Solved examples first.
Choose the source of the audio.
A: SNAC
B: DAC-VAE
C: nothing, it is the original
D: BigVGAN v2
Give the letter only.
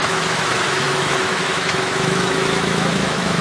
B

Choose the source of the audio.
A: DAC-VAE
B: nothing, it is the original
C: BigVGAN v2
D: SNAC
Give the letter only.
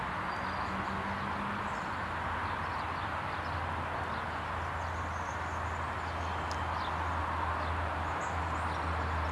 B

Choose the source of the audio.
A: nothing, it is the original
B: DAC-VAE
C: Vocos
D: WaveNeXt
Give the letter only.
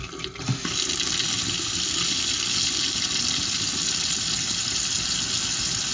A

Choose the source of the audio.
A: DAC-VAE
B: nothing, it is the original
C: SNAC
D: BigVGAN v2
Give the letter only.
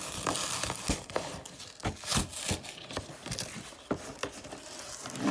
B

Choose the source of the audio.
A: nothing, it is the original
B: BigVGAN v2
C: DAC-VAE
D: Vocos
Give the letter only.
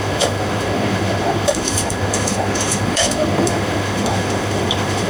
C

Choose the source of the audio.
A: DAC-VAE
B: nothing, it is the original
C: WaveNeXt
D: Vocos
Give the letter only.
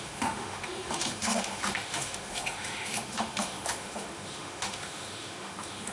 A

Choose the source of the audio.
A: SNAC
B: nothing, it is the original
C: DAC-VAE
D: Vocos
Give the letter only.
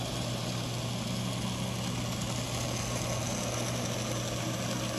B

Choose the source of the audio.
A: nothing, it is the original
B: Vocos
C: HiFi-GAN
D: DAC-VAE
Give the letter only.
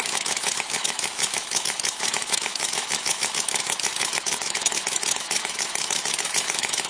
D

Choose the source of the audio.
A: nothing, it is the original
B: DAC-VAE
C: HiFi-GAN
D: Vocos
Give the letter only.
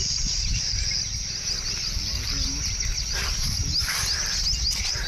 A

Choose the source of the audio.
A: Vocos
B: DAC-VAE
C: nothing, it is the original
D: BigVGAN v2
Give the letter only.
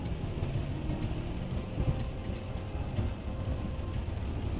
C